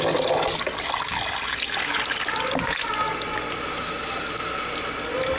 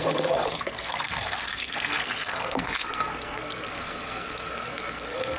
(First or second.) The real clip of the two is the first